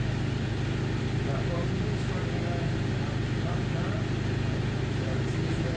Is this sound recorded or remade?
recorded